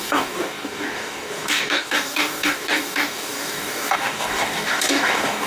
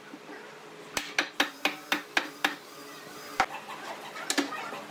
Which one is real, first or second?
second